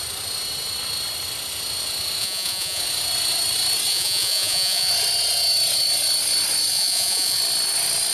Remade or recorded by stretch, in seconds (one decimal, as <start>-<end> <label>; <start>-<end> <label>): 0.0-2.2 recorded; 2.2-2.8 remade; 2.8-3.9 recorded; 3.9-4.9 remade; 4.9-6.7 recorded; 6.7-7.4 remade; 7.4-8.1 recorded